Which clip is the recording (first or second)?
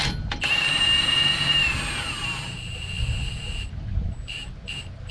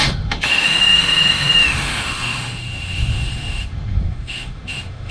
first